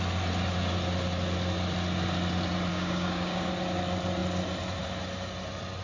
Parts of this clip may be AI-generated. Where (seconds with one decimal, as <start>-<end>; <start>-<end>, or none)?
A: 2.7-3.5